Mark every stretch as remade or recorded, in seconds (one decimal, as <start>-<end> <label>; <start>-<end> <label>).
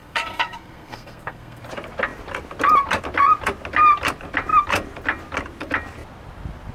0.0-1.6 remade; 1.6-6.7 recorded